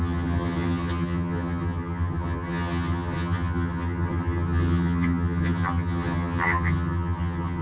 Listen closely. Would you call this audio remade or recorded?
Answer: remade